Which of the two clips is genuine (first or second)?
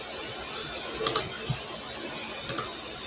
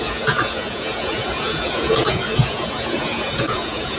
first